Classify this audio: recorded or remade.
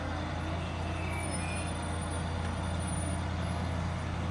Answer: recorded